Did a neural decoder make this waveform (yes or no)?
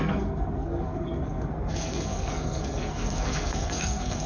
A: yes